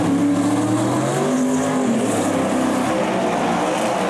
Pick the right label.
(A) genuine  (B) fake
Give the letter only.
A